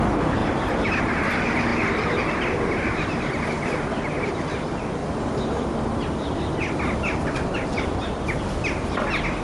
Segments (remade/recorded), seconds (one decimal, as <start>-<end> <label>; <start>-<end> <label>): 0.0-1.7 remade; 1.7-2.4 recorded; 2.4-5.0 remade; 5.0-6.0 recorded; 6.0-9.4 remade